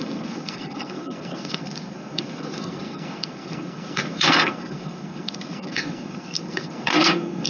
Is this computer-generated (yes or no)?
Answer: yes